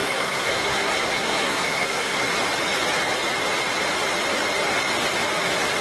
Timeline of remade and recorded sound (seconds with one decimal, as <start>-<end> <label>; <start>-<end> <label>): 0.0-2.2 remade; 2.2-5.8 recorded